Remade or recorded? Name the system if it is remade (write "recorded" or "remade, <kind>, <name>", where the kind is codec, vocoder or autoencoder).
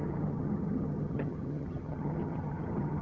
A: remade, vocoder, HiFi-GAN